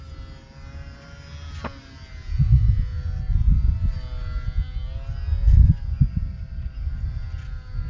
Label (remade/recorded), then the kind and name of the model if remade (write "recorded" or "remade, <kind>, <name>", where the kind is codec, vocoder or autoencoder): recorded